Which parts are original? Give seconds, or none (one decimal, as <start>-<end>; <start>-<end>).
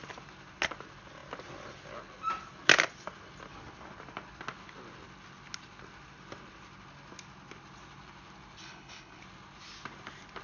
0.0-8.6; 9.2-10.4